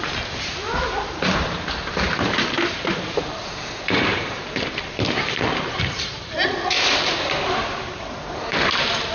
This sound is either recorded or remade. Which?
remade